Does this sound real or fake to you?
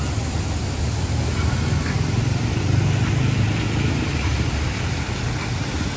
real